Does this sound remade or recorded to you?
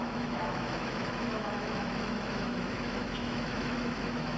remade